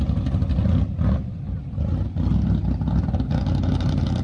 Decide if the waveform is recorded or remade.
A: recorded